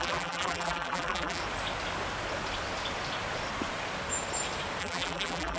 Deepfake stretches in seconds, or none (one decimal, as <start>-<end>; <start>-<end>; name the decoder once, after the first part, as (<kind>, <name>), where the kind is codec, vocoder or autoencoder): 0.0-1.4 (vocoder, BigVGAN v2); 4.8-5.6